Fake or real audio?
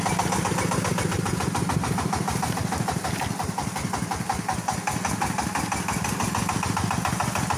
real